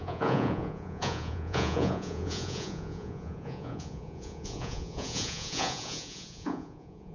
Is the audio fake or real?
fake